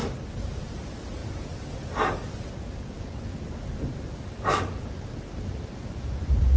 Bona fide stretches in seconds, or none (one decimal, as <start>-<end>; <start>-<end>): 0.0-6.6